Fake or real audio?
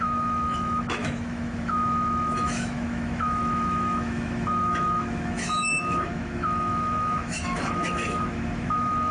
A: fake